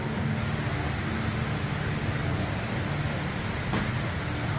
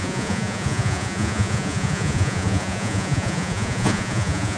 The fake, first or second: second